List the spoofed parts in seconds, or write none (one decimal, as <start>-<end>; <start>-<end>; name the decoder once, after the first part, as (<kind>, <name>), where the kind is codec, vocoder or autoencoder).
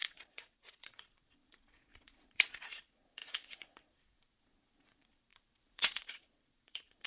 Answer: 0.0-7.1 (vocoder, Vocos)